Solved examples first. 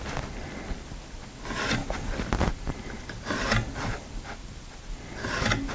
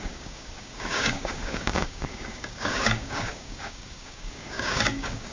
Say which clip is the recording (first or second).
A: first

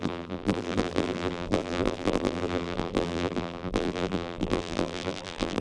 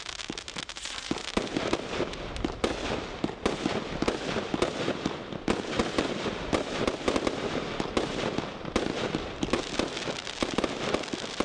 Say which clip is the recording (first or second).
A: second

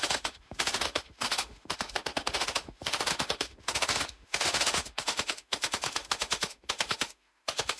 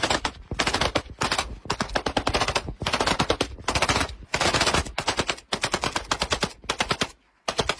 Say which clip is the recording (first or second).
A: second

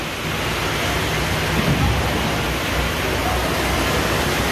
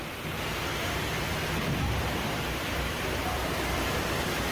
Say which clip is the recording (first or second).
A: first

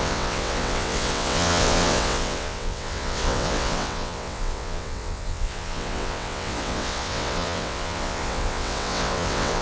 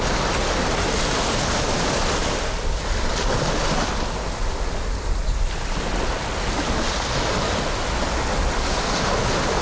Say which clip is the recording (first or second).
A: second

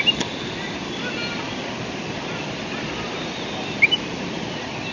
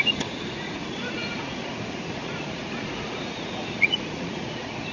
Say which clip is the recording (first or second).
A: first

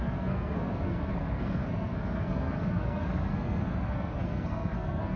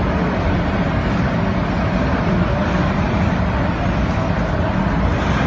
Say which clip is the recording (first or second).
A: second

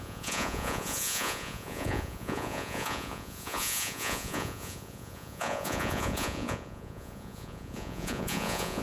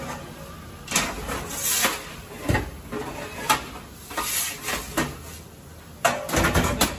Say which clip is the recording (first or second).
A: second